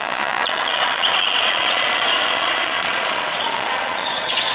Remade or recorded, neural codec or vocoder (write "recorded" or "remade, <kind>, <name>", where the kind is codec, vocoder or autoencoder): remade, vocoder, Vocos